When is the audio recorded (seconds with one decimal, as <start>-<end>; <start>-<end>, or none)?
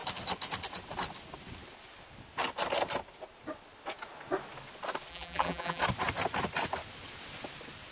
0.0-5.1; 5.8-7.9